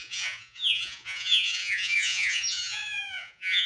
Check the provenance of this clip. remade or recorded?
remade